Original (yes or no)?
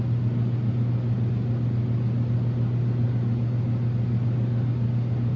yes